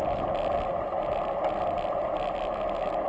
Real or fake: real